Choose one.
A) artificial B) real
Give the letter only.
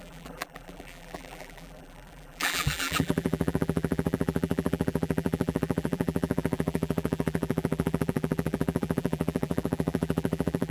A